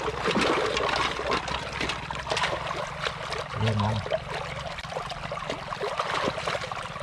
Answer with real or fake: real